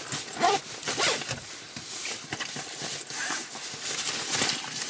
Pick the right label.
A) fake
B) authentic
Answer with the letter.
B